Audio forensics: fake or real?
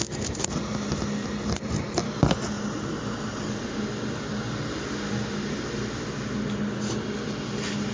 real